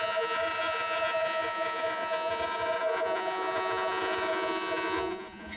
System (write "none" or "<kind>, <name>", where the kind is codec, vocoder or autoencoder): vocoder, Vocos